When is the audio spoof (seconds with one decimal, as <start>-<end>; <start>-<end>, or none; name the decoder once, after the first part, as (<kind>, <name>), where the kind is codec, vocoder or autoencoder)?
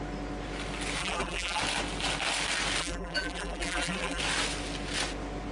1.0-1.6 (vocoder, BigVGAN v2); 2.8-4.2